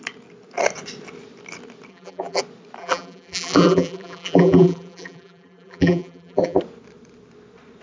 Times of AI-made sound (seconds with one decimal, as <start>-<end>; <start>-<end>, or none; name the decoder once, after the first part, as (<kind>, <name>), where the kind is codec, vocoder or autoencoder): 1.9-2.4 (vocoder, BigVGAN v2); 2.8-6.6